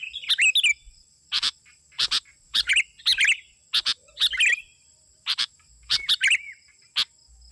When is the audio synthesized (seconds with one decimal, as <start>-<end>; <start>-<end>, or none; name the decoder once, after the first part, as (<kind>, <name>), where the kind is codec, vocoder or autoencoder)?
0.8-2.7 (vocoder, BigVGAN v2); 4.8-6.1